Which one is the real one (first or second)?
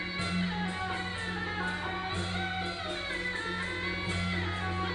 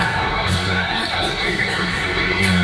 first